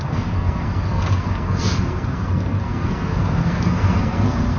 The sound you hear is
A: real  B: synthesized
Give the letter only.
B